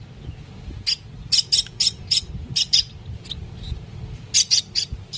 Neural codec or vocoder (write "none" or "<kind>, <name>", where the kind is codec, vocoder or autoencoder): none